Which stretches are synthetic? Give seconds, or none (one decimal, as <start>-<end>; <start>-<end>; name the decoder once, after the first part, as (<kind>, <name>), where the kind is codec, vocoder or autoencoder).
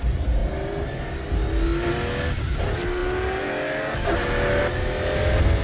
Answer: none